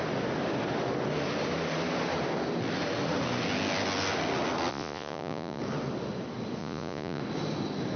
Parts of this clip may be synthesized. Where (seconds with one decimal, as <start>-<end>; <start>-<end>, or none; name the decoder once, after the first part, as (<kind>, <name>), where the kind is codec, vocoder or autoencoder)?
4.7-5.6 (vocoder, Vocos); 6.6-7.2